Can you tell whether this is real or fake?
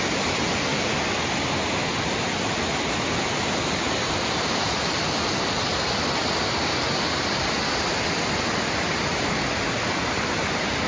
real